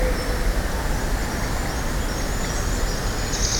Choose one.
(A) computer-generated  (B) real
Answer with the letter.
B